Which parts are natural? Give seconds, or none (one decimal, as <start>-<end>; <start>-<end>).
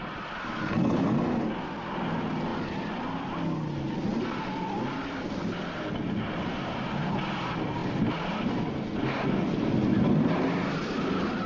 0.0-11.5